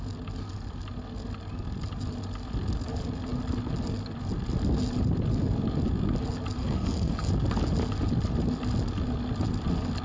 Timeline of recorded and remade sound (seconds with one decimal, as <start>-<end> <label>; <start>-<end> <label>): 0.0-6.6 recorded; 6.6-7.3 remade; 7.3-10.0 recorded